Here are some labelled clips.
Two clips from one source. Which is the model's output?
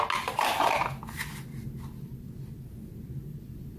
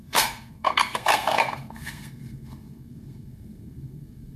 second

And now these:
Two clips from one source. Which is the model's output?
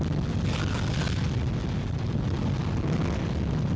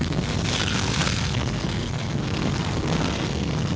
second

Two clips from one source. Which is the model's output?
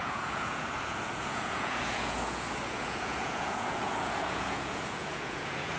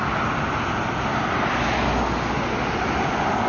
first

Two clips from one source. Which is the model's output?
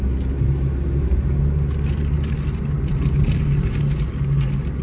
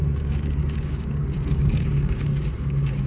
second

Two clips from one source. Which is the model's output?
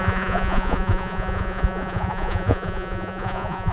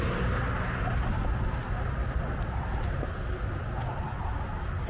first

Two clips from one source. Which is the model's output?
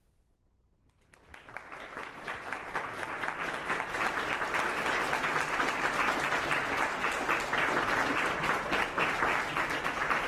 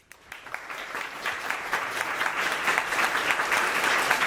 second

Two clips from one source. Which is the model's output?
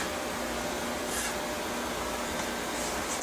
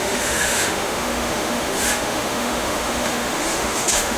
second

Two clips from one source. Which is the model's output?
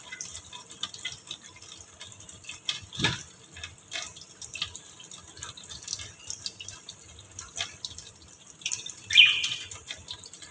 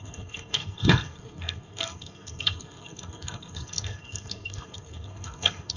second